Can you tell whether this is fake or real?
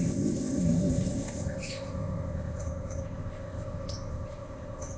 fake